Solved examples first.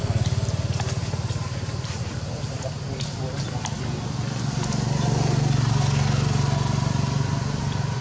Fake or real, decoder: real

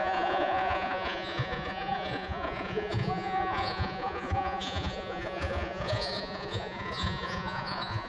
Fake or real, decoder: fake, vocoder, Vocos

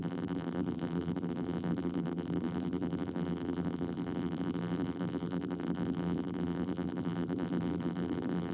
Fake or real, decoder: fake, vocoder, BigVGAN v2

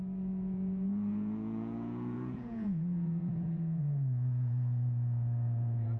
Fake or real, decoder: fake, vocoder, Vocos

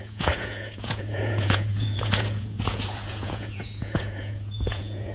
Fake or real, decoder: fake, vocoder, Vocos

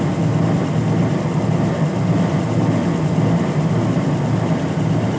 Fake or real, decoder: real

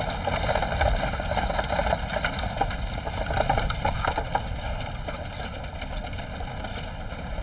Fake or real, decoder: real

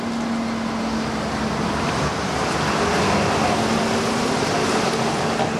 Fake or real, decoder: real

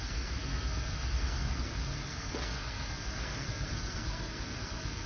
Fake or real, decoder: fake, codec, SNAC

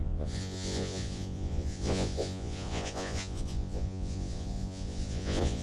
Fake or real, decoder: fake, vocoder, Vocos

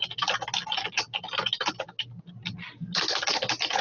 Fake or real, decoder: real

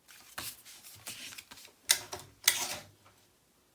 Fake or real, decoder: real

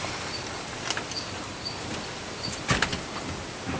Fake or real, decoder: real